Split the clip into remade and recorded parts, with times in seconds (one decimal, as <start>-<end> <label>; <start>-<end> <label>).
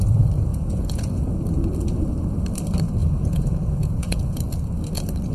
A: 0.0-0.5 recorded; 0.5-1.3 remade; 1.3-3.0 recorded; 3.0-4.4 remade; 4.4-5.3 recorded